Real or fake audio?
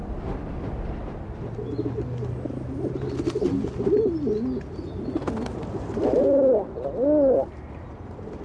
real